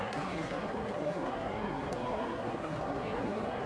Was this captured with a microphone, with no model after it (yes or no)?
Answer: no